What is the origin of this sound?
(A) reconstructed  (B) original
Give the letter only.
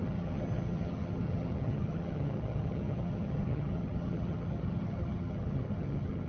A